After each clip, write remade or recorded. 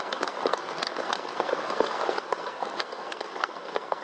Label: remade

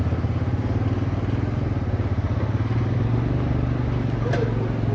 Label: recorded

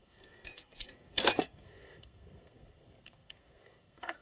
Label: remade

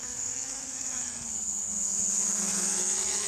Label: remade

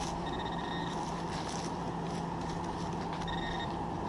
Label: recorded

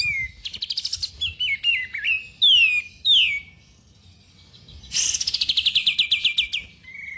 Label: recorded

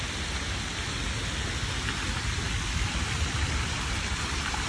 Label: recorded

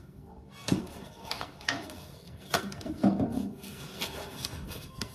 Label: remade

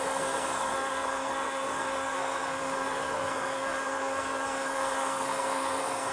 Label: remade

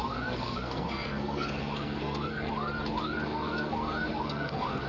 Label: remade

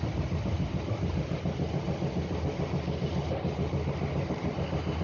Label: recorded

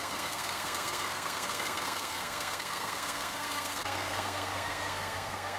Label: remade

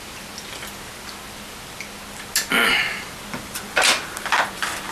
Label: recorded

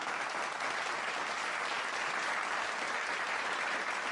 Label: recorded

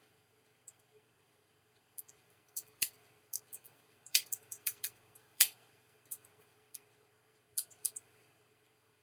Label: remade